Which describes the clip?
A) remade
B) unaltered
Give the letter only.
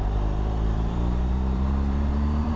A